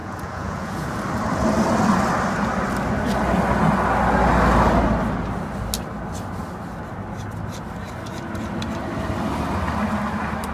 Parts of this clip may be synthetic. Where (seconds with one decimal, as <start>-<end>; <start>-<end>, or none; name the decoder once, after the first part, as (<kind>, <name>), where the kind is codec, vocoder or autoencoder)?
0.0-0.9 (vocoder, Vocos)